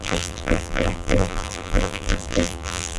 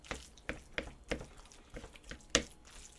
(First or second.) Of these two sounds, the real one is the second